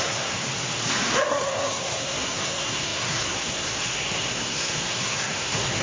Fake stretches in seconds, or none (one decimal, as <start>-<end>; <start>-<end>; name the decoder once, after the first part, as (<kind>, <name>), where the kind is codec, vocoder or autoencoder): 0.0-0.5 (codec, SNAC); 1.3-5.8